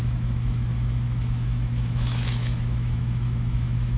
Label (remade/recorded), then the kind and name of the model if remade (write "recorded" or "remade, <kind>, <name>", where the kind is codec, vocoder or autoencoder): remade, autoencoder, DAC-VAE